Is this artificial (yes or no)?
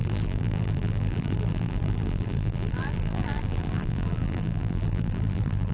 yes